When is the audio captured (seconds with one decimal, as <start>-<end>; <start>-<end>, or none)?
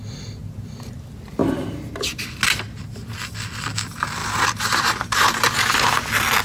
0.0-0.4; 0.9-1.4; 2.4-4.2; 5.4-6.4